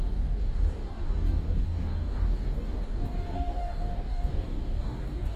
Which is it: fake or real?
fake